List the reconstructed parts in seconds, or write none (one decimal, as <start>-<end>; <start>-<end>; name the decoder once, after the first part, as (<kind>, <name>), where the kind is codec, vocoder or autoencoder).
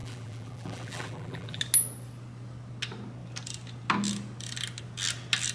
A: 0.0-1.6 (vocoder, BigVGAN v2)